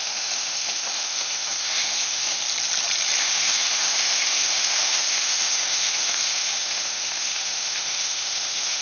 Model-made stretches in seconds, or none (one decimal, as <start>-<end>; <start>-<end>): 0.0-2.4; 3.2-8.8